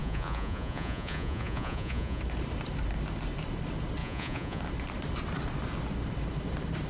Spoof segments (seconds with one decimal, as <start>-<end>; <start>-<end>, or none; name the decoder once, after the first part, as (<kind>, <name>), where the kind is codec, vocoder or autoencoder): 0.0-2.2 (vocoder, Vocos); 4.0-4.6